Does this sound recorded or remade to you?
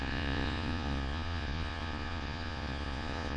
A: remade